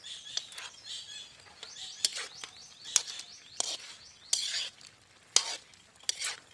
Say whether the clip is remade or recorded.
recorded